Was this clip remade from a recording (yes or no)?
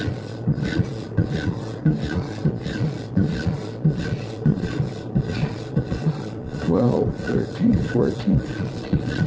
yes